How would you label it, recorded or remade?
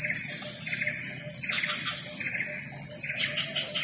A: recorded